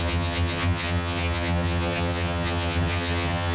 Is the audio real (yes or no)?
no